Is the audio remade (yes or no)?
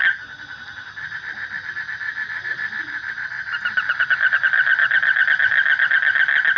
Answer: no